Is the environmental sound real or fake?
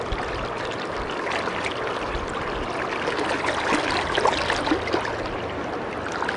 real